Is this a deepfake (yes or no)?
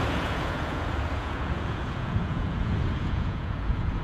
yes